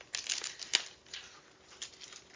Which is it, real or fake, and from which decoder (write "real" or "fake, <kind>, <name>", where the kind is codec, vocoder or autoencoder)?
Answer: real